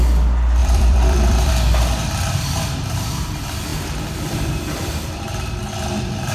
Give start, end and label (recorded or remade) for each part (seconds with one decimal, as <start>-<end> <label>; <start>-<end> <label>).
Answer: 0.0-0.6 recorded; 0.6-1.5 remade; 1.5-6.3 recorded